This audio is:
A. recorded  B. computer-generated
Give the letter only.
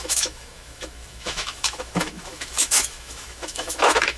B